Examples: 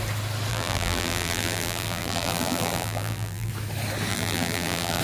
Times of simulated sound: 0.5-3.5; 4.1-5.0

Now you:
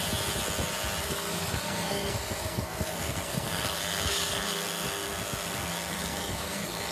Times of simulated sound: 1.0-6.9